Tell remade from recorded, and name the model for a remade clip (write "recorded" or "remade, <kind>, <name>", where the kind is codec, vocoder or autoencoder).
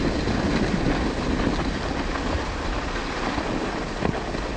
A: recorded